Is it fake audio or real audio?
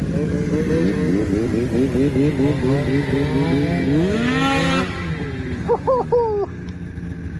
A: real